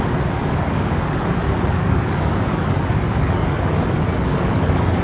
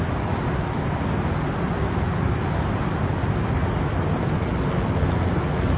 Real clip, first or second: second